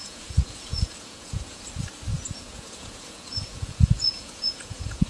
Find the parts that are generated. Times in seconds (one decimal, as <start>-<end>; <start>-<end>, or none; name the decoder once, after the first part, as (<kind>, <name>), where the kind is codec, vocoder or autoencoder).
0.0-1.7 (vocoder, Vocos); 2.1-5.1